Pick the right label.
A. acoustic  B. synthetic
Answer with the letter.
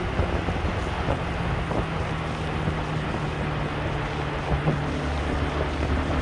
A